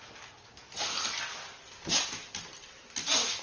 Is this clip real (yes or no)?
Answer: yes